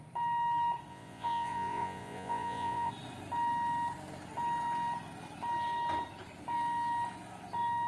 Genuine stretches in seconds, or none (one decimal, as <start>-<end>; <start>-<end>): 0.0-0.9; 2.9-7.9